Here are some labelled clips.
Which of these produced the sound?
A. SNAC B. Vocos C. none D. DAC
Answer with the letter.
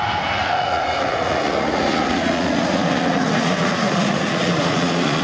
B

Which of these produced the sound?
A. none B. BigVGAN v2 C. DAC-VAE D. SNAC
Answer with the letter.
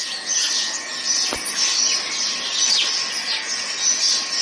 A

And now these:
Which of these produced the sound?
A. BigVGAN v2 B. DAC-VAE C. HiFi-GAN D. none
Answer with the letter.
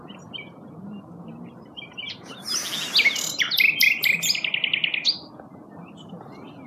D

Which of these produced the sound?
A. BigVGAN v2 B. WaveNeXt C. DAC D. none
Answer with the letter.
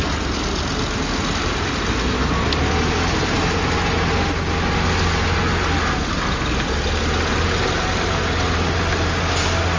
D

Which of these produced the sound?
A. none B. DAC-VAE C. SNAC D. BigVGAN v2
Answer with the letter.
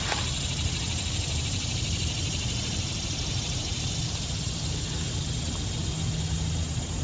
D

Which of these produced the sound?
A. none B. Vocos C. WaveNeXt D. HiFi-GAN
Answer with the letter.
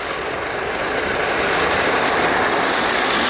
A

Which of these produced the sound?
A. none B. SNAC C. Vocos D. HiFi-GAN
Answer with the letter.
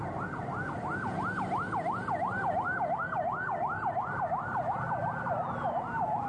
A